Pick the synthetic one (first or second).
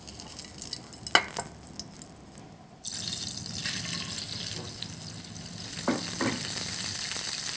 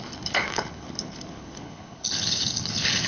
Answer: second